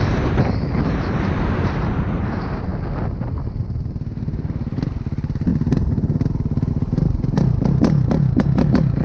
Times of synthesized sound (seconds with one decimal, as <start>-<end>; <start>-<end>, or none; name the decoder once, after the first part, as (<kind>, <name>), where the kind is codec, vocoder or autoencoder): 0.0-2.7 (vocoder, BigVGAN v2); 3.6-5.5; 6.7-9.0